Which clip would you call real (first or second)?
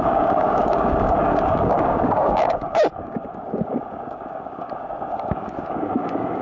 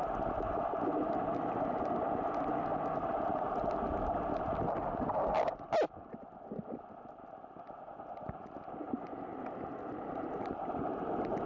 second